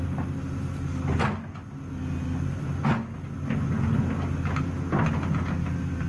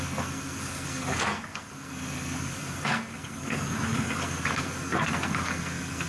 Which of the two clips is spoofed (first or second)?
second